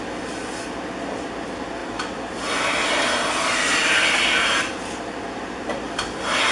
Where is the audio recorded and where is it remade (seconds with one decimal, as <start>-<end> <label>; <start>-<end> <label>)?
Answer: 0.0-6.5 recorded